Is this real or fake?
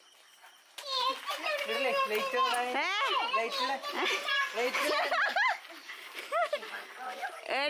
real